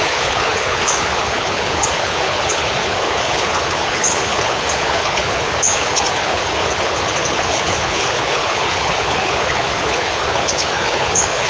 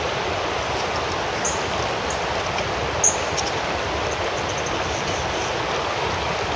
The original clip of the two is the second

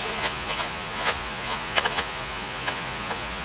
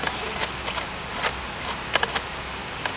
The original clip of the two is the second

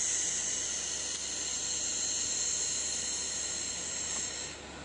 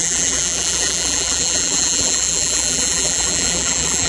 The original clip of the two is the first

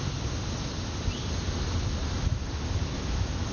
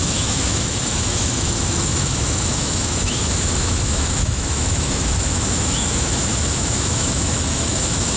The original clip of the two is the first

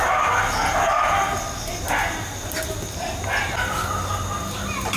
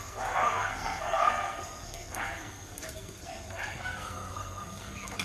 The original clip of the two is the first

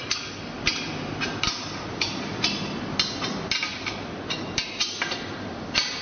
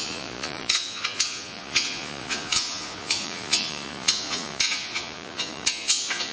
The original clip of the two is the first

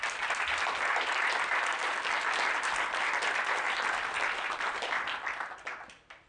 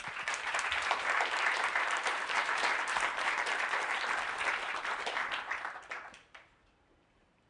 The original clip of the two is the first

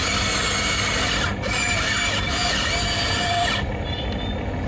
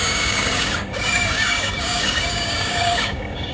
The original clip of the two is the first